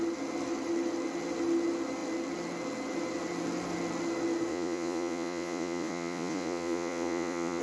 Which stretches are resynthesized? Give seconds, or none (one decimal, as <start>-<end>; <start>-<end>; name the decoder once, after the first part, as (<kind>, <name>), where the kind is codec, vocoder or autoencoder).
4.5-7.6 (vocoder, Vocos)